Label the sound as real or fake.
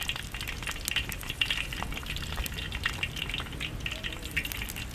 real